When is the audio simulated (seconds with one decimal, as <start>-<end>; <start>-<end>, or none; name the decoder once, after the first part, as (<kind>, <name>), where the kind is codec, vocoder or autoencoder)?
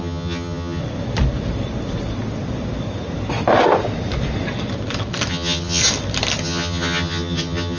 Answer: 0.0-0.8 (vocoder, HiFi-GAN); 5.3-5.8; 6.4-7.8